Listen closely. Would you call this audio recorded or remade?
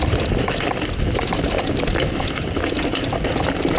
recorded